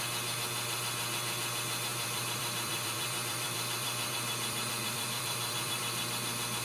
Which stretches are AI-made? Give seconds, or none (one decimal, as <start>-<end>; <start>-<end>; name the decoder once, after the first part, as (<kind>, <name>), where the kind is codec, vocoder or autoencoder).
1.9-5.8 (vocoder, BigVGAN v2)